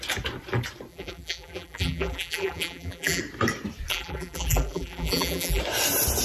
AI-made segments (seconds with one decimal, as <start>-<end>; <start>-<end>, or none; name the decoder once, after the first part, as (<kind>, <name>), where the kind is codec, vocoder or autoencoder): 0.9-3.2 (vocoder, BigVGAN v2); 3.9-5.6